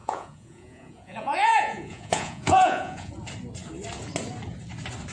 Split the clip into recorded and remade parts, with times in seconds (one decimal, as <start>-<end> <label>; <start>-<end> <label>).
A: 0.0-3.1 remade; 3.1-5.1 recorded